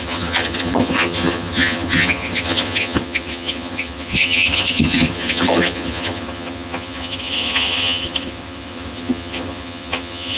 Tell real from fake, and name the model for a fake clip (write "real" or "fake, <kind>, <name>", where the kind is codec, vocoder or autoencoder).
fake, vocoder, HiFi-GAN